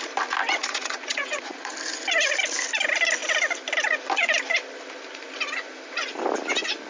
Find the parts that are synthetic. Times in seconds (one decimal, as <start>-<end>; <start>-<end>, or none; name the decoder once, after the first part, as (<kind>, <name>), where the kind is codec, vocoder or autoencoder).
0.6-1.7 (vocoder, Vocos)